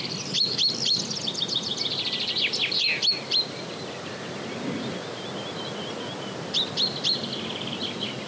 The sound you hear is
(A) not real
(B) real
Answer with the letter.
B